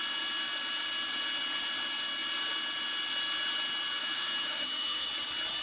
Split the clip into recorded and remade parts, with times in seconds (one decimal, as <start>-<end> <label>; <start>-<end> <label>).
0.0-4.0 recorded; 4.0-5.1 remade; 5.1-5.6 recorded